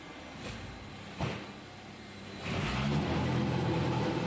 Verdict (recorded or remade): recorded